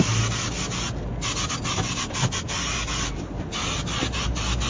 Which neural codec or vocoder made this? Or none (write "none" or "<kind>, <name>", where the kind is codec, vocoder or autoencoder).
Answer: none